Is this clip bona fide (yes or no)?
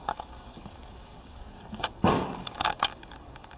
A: no